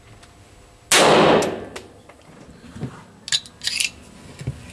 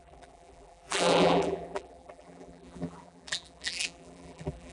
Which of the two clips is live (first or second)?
first